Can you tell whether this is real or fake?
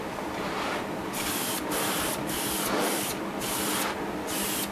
real